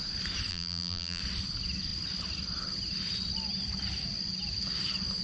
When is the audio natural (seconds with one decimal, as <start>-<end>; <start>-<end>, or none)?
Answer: 0.0-0.5; 1.2-5.2